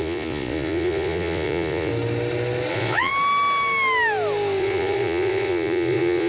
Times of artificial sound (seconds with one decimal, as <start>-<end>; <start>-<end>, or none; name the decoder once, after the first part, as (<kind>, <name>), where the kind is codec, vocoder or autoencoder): 0.0-1.9 (vocoder, Vocos); 2.7-3.1; 4.6-6.3